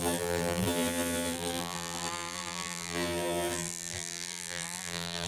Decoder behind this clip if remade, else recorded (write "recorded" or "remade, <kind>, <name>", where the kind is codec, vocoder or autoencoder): remade, vocoder, BigVGAN v2